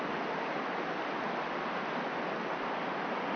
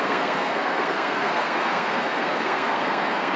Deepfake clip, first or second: second